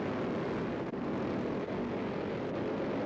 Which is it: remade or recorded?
recorded